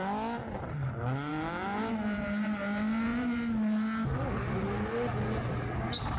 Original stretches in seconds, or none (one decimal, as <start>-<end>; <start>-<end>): 0.0-6.2